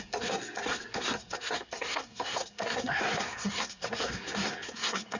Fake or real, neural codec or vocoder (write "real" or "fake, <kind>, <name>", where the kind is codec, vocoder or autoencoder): fake, codec, SNAC